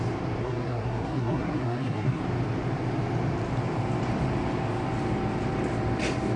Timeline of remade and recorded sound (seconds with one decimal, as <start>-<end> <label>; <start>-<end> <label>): 0.0-0.4 recorded; 0.4-2.2 remade; 2.2-6.4 recorded